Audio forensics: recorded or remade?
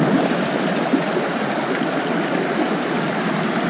recorded